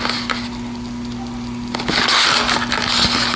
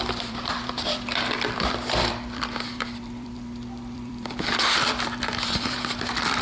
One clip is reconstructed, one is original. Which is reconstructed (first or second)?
second